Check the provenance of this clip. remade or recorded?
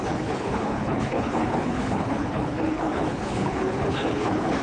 remade